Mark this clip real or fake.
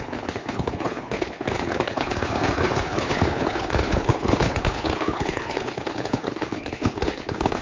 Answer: fake